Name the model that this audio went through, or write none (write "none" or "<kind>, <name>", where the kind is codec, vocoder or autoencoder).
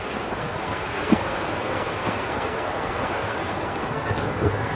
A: codec, SNAC